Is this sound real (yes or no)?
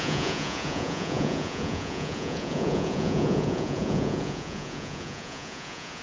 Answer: no